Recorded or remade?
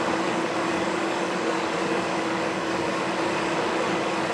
remade